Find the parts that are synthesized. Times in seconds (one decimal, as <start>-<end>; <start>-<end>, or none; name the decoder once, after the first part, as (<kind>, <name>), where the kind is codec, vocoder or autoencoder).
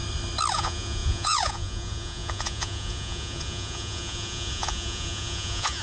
0.5-5.8 (vocoder, Vocos)